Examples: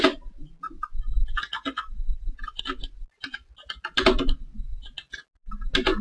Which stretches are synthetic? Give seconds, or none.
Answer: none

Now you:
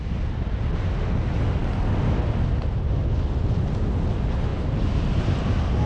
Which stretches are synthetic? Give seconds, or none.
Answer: 4.5-5.4 (vocoder, BigVGAN v2)

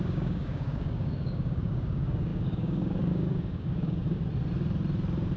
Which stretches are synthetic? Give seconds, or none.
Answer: 0.0-4.2 (codec, DAC)

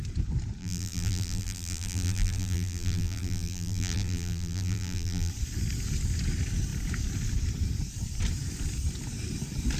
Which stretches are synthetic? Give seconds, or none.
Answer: 0.6-5.3 (vocoder, BigVGAN v2)

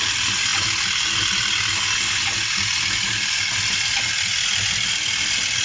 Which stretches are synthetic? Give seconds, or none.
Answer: none

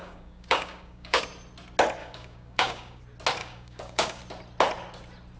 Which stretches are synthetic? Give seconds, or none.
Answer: 0.0-1.2 (codec, DAC); 2.0-3.0; 3.4-4.2